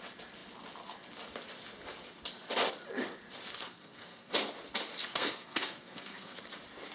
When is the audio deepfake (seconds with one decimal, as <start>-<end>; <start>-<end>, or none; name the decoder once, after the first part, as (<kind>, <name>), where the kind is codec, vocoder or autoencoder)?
3.5-4.3 (codec, SNAC); 5.1-6.4